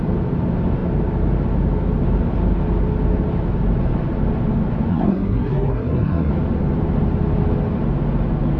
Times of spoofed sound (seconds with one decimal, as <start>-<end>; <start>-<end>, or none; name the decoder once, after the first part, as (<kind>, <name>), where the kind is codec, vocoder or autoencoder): 4.9-6.3 (codec, SNAC)